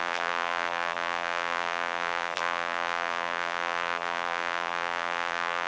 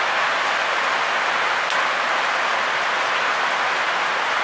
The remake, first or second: first